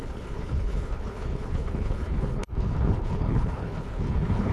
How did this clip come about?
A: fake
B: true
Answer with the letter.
A